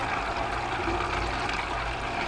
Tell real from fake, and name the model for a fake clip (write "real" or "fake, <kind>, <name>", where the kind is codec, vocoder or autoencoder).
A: real